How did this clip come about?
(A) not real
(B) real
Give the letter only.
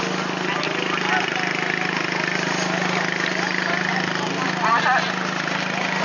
B